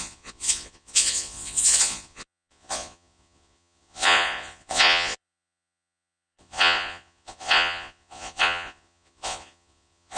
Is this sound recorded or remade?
remade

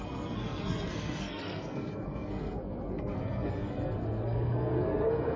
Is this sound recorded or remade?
remade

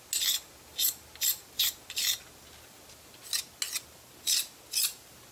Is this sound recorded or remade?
recorded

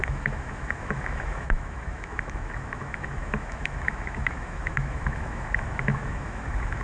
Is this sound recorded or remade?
remade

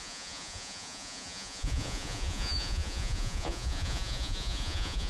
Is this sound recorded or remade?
remade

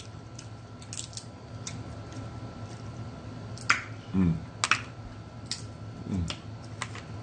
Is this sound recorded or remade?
recorded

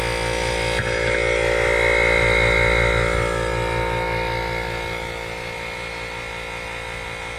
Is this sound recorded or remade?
recorded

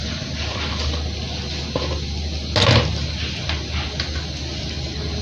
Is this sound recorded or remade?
recorded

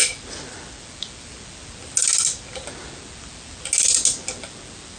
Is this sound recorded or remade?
recorded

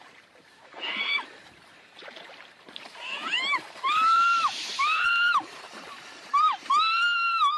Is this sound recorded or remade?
remade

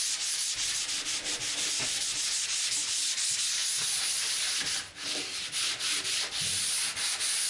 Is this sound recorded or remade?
recorded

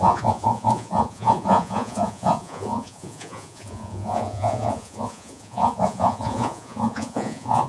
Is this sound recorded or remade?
remade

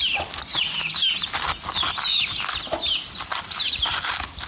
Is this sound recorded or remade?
recorded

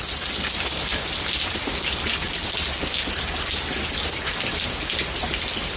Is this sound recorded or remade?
recorded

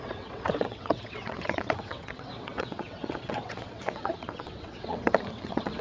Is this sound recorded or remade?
remade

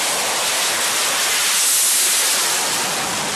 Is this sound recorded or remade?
recorded